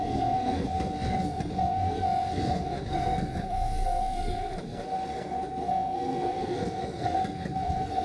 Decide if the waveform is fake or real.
fake